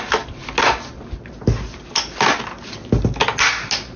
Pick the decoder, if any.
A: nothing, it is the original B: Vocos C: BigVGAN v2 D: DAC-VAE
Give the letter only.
A